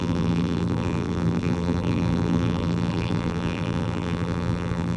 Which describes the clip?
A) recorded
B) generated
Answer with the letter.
B